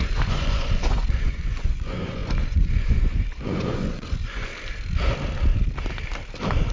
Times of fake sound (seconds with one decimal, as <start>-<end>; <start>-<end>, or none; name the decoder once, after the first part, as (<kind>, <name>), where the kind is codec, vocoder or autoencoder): 0.0-4.5 (vocoder, Vocos)